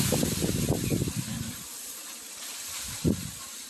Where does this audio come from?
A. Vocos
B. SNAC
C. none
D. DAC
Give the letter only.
C